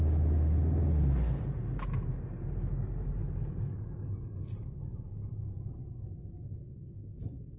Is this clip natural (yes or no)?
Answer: yes